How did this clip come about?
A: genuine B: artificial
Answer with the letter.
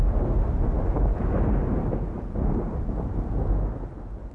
A